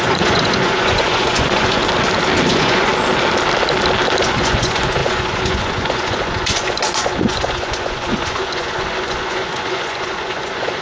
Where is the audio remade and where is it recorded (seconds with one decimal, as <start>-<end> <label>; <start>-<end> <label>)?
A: 0.0-1.8 remade; 1.8-2.5 recorded; 2.5-2.9 remade; 2.9-4.2 recorded; 4.2-10.8 remade